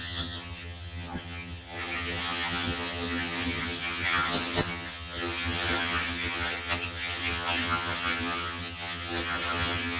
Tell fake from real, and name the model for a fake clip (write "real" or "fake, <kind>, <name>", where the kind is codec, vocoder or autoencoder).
fake, vocoder, HiFi-GAN